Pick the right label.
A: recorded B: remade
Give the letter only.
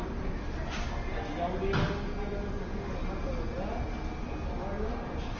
A